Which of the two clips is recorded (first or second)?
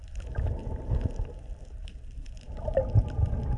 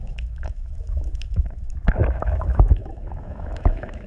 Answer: first